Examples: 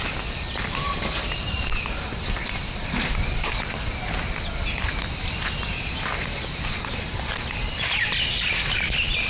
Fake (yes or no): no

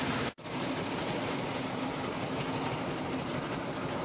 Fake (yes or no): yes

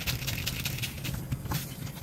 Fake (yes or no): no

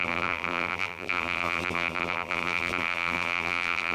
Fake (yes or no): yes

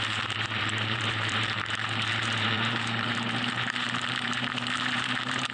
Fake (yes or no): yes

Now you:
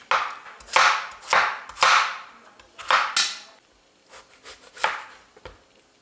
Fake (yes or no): no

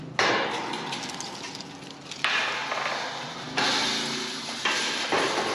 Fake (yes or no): no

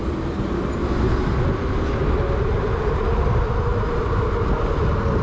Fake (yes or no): no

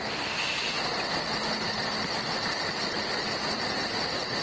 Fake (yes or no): no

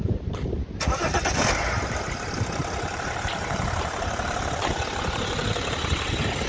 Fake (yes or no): yes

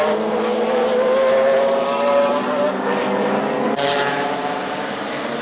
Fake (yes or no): yes